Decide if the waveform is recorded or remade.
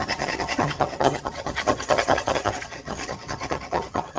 remade